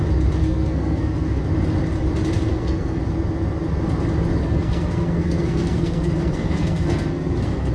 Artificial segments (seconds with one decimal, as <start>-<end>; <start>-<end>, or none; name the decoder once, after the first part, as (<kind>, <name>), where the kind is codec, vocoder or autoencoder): 0.4-1.4 (codec, SNAC); 2.5-3.0; 4.4-7.7